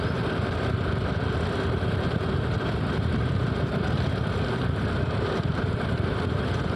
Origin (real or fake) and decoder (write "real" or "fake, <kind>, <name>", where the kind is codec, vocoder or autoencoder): real